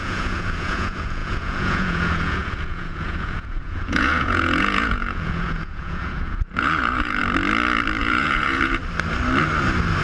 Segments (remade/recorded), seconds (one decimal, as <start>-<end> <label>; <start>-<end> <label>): 0.0-7.2 remade; 7.2-8.0 recorded; 8.0-8.8 remade; 8.8-10.0 recorded